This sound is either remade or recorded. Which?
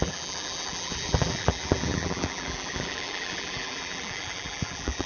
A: remade